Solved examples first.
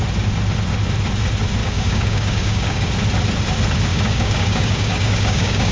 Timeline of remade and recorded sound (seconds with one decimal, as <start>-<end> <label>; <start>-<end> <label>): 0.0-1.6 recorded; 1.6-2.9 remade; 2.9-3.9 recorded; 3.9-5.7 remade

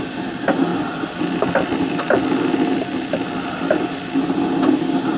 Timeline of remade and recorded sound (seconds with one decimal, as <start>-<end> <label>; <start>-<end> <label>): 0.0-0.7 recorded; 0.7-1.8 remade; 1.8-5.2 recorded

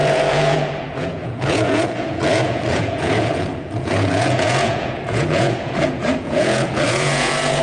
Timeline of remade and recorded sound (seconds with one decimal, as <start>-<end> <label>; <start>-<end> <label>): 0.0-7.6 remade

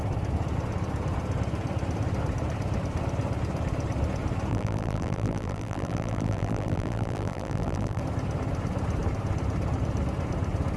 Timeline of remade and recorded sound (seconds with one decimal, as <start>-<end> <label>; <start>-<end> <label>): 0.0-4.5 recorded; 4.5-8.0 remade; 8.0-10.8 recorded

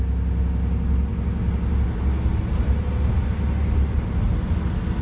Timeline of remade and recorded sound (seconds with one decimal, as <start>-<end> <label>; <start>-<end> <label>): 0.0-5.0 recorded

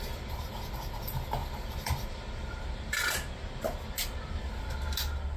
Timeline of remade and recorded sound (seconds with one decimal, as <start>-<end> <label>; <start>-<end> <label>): 0.0-1.4 recorded; 1.4-3.5 remade; 3.5-5.4 recorded

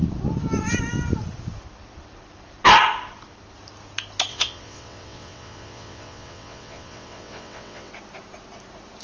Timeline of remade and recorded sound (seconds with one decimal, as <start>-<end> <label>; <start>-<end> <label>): 0.0-4.3 recorded; 4.3-7.9 remade; 7.9-9.0 recorded

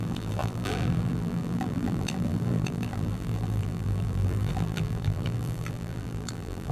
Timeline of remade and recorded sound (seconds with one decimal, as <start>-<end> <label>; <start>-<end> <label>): 0.0-6.7 remade